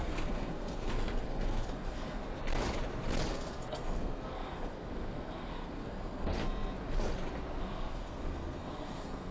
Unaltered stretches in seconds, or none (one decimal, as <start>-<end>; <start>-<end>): 2.2-3.3; 6.3-7.6